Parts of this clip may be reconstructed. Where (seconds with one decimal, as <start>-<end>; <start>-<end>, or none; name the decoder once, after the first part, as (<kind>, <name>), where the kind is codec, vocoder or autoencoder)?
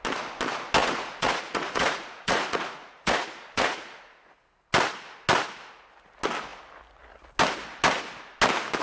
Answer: 0.8-4.2 (vocoder, Vocos)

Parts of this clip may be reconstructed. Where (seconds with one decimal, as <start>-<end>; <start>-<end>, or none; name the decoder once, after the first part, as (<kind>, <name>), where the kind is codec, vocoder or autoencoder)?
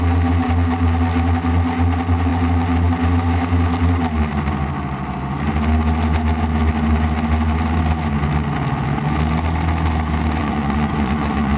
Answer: 10.4-11.6 (vocoder, Vocos)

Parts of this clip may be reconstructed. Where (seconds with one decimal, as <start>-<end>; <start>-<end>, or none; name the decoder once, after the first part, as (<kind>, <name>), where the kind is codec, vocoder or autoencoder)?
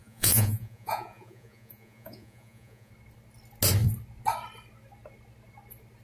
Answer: 0.0-2.9 (vocoder, Vocos)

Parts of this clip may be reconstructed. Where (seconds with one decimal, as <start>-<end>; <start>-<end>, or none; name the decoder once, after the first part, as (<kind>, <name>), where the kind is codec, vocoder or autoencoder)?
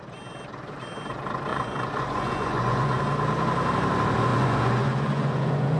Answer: 1.5-3.0 (vocoder, Vocos); 4.3-5.8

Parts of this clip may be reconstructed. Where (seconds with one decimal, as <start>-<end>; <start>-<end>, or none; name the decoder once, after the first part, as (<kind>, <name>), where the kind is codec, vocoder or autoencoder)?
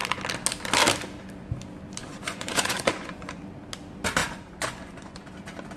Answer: 2.0-3.4 (vocoder, Vocos); 4.2-5.3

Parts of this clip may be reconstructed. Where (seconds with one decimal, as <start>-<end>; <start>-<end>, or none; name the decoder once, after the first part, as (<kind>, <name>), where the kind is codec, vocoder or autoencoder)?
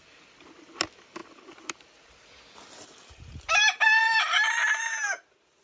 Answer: none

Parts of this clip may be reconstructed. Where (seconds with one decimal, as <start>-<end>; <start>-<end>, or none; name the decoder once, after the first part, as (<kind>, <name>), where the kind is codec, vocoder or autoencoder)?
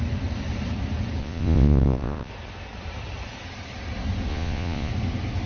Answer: 1.2-2.3 (vocoder, Vocos); 4.3-4.9